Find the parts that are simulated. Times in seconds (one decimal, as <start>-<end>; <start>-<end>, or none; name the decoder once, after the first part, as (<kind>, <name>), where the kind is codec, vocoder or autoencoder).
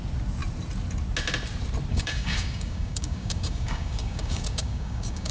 1.9-5.3 (codec, DAC)